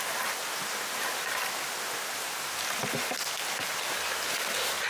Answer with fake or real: real